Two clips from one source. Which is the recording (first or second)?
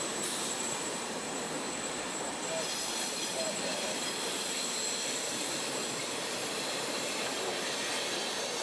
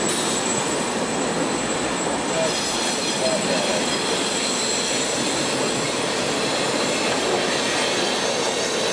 second